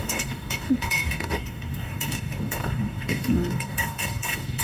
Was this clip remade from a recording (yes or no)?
yes